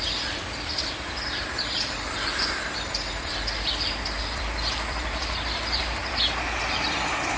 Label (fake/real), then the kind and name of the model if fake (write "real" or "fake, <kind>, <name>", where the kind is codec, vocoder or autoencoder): fake, vocoder, BigVGAN v2